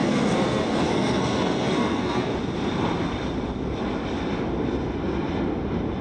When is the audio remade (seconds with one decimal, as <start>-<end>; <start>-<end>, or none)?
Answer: 0.0-2.3